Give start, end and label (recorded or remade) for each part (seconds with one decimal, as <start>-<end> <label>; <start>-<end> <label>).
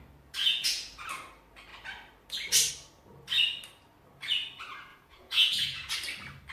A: 0.0-0.4 recorded; 0.4-1.1 remade; 1.1-4.9 recorded; 4.9-5.9 remade; 5.9-6.5 recorded